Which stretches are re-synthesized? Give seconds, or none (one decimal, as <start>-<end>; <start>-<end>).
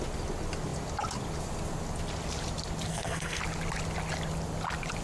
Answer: 2.9-3.4